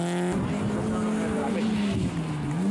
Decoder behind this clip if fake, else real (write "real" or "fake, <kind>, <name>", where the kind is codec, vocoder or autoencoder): real